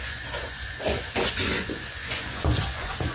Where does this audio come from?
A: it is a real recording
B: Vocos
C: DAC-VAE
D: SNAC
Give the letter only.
B